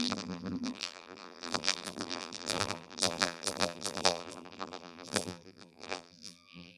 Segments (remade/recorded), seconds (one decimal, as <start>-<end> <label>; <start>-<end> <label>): 0.0-6.8 remade